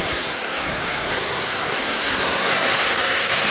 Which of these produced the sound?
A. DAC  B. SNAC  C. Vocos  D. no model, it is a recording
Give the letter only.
B